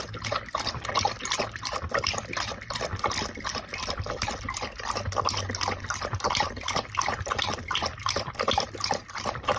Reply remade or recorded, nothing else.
recorded